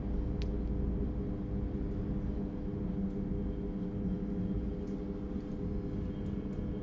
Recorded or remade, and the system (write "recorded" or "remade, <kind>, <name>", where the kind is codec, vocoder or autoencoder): recorded